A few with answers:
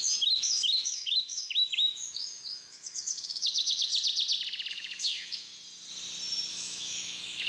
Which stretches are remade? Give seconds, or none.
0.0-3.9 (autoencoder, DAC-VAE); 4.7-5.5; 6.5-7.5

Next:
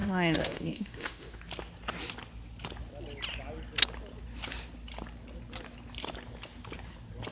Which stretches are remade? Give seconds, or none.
0.0-1.4 (autoencoder, DAC-VAE)

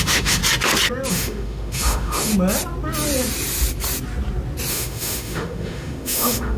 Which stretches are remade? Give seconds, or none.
0.0-0.4 (autoencoder, DAC-VAE); 1.1-2.3; 4.7-6.6

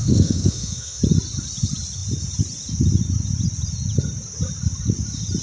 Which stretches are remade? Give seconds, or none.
0.0-1.0 (autoencoder, DAC-VAE)

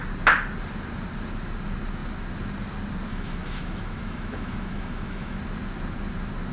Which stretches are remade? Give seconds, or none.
3.1-5.4 (autoencoder, DAC-VAE)

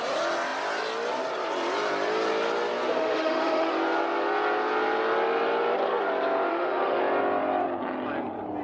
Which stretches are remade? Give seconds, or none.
2.9-3.7 (autoencoder, DAC-VAE); 6.5-7.0

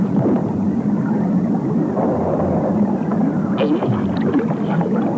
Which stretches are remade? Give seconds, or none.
none